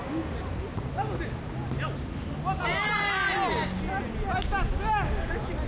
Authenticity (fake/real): real